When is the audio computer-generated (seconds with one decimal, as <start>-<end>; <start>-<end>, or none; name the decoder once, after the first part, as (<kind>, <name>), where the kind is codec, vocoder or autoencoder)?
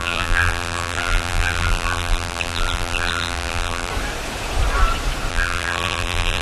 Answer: 0.0-3.9 (vocoder, BigVGAN v2); 5.3-6.4